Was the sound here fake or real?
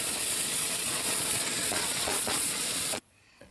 fake